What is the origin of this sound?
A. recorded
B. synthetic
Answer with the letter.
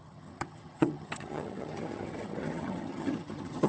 B